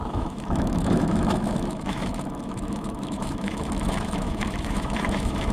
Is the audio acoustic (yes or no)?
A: no